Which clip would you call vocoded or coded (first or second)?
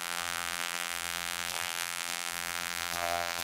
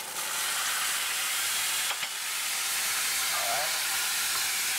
first